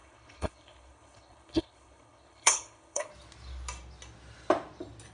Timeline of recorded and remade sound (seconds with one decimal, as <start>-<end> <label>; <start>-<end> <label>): 0.0-3.1 remade; 3.1-5.1 recorded